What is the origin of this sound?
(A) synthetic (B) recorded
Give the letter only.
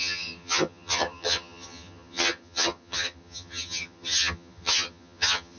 A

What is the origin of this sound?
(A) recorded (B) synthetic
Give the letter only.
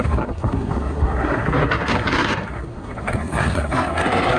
B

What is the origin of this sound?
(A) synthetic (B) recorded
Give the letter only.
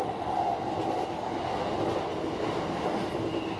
B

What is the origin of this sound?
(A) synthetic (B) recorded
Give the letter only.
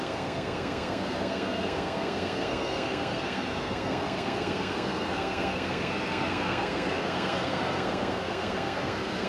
A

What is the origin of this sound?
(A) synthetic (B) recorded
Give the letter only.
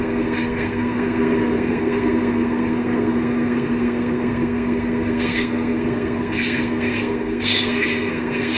A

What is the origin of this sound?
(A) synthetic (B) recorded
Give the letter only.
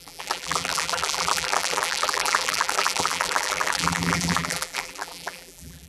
A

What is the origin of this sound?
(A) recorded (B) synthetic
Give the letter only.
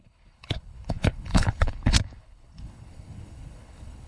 B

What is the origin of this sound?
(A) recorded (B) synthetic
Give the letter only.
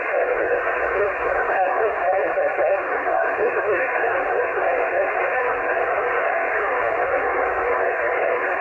B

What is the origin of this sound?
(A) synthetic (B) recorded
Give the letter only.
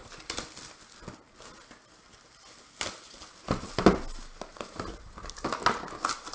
B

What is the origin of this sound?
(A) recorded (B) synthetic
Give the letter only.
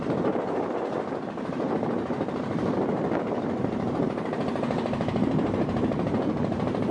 B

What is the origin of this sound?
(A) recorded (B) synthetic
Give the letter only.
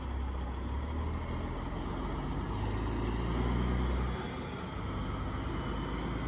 A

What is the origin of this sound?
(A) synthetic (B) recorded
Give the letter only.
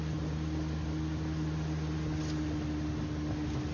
B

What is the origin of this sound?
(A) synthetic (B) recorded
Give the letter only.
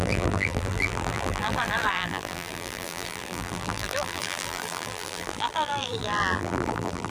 A